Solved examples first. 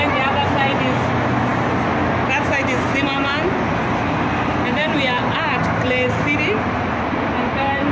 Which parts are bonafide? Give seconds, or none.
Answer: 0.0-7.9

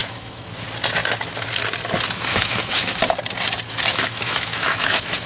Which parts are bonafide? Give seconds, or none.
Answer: 0.5-2.3; 3.0-3.9

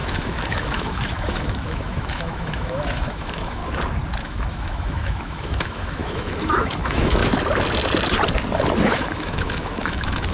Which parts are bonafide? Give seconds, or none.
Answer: 3.6-4.2; 7.2-8.8

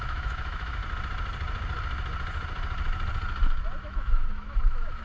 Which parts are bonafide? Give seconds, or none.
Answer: 0.8-3.8